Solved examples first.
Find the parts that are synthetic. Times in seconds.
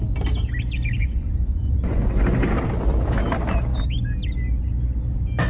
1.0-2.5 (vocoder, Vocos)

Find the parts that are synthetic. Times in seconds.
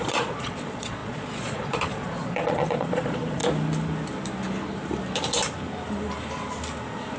0.0-3.4 (vocoder, Vocos)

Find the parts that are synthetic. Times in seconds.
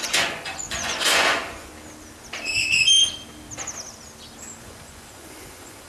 0.0-1.7 (vocoder, Vocos); 4.6-5.9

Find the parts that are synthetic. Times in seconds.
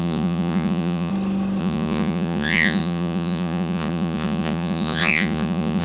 0.0-1.1 (vocoder, Vocos); 1.6-5.8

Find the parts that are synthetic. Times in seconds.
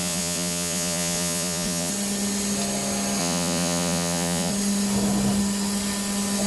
0.0-1.9 (vocoder, Vocos); 3.2-4.5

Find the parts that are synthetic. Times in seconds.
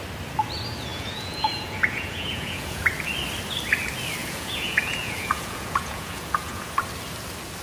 0.9-2.8 (vocoder, Vocos); 4.2-6.6